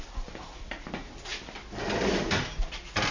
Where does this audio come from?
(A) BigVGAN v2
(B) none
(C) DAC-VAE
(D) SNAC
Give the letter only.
B